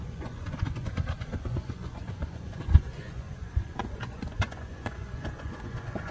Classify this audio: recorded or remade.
remade